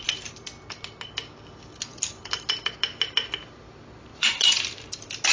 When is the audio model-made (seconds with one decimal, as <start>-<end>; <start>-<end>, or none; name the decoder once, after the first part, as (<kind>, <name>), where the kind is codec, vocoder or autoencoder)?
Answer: 4.1-4.6 (vocoder, Vocos)